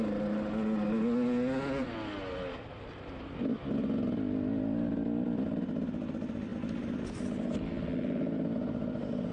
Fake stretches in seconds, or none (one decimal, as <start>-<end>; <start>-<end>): none